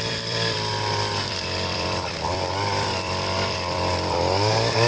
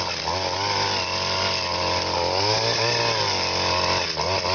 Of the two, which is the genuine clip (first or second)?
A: second